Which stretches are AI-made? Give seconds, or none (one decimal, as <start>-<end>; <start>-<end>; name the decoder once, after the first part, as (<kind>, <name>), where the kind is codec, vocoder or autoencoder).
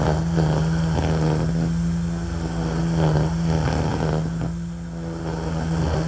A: none